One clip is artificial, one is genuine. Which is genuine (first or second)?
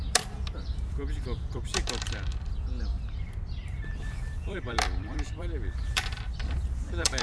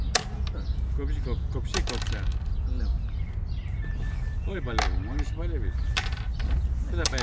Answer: second